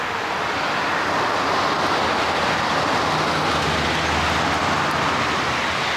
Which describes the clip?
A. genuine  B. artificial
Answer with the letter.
A